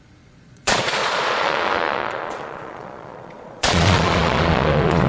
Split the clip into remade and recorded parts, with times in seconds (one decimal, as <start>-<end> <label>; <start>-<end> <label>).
0.0-5.1 remade